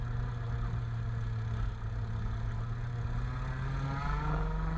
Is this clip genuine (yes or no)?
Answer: yes